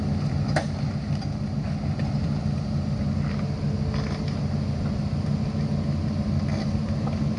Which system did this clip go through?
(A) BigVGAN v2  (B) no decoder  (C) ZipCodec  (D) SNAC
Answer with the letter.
B